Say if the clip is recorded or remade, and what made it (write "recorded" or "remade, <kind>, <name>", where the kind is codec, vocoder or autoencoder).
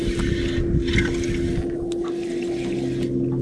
recorded